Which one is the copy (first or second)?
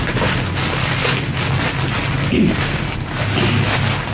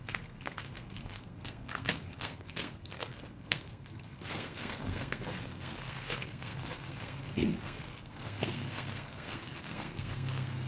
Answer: second